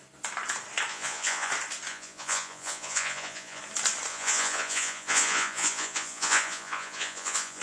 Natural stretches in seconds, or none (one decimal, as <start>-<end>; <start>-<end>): 0.0-0.9; 1.5-1.9; 3.6-4.1